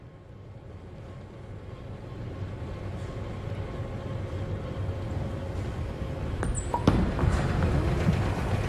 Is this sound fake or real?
real